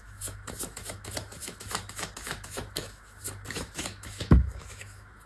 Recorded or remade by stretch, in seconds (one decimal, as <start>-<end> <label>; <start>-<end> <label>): 0.0-5.3 remade